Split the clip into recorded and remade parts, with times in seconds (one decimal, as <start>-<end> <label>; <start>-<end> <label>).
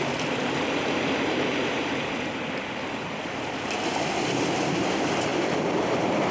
0.0-6.3 recorded